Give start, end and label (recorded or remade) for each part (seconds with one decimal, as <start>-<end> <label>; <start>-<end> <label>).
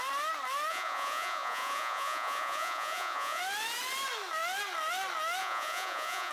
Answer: 0.0-0.7 recorded; 0.7-3.4 remade; 3.4-5.4 recorded; 5.4-6.3 remade